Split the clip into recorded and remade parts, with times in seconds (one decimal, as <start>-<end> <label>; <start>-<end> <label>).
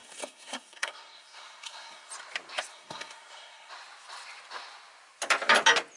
0.0-2.1 remade; 2.1-2.7 recorded; 2.7-3.7 remade; 3.7-6.0 recorded